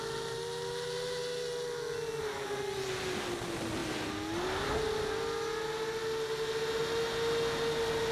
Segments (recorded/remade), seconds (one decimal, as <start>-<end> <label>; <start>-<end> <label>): 0.0-8.1 recorded